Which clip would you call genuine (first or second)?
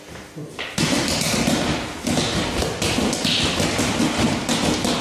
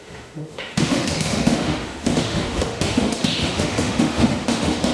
first